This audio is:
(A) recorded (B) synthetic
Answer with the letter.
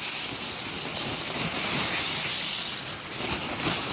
A